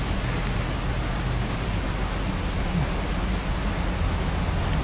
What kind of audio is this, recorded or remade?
recorded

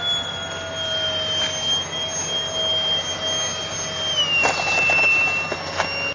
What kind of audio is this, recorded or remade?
recorded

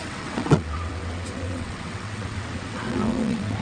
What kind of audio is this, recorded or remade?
remade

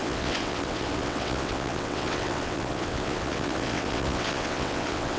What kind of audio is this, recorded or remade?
remade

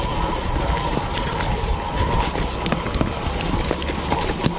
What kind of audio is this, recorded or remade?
recorded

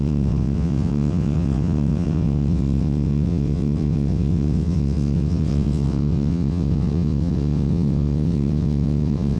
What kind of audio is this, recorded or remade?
remade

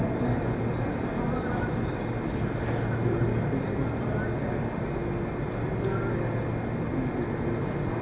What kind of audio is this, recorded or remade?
recorded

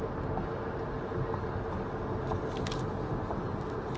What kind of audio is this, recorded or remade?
recorded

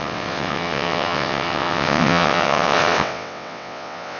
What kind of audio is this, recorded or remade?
remade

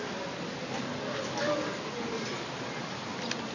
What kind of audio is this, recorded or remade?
recorded